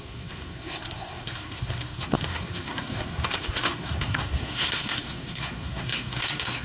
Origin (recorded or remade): remade